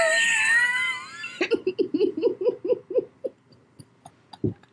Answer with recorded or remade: recorded